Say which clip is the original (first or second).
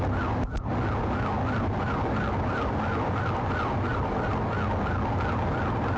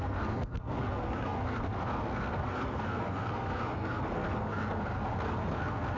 first